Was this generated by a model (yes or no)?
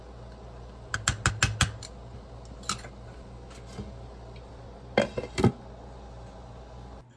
no